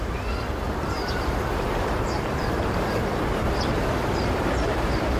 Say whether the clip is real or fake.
fake